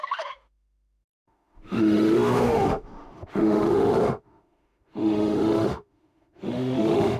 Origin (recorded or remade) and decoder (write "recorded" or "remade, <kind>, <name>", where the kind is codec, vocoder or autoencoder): remade, autoencoder, DAC-VAE